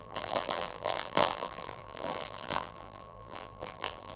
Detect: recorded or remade remade